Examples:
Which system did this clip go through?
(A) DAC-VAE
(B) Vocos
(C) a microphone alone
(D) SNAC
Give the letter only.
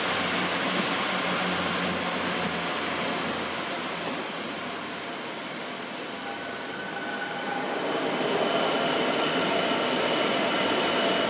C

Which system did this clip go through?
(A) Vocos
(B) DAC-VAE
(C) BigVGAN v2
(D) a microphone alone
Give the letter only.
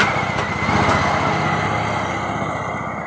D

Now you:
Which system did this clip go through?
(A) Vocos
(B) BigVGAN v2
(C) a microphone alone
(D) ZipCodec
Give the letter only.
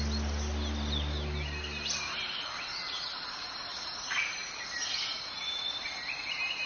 C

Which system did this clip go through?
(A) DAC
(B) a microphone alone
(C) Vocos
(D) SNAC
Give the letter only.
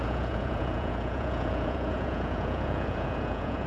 C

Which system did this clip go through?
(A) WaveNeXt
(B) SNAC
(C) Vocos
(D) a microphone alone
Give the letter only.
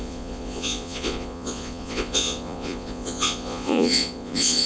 C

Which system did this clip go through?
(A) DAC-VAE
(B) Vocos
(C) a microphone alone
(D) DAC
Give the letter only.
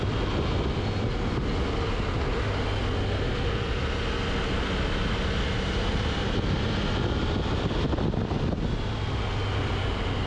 C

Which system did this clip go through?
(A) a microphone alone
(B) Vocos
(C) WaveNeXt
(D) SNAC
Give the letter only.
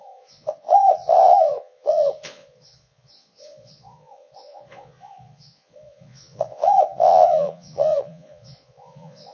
B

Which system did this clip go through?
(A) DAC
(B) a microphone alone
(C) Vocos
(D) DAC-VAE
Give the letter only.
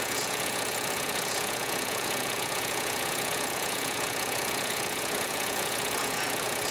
C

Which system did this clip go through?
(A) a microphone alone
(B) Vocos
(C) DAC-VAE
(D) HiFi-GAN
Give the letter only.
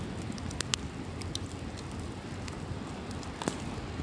A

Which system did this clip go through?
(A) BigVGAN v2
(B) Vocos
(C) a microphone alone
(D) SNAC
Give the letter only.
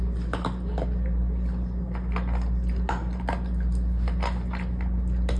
C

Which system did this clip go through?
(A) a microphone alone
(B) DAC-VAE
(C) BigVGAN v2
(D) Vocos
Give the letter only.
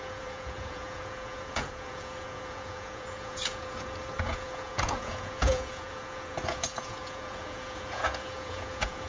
D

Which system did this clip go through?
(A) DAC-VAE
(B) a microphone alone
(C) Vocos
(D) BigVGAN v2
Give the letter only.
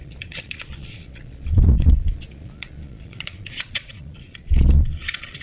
C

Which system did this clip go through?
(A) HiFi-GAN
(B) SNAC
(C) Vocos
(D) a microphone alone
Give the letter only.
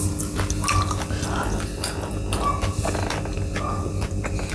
D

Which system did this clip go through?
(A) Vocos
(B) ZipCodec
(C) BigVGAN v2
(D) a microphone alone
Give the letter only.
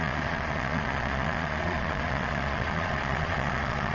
A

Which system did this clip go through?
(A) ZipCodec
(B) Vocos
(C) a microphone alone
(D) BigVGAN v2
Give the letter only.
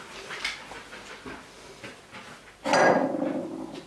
C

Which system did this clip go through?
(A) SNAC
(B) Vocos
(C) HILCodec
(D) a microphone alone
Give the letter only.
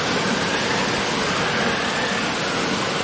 D